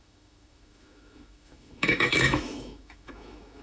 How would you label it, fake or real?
fake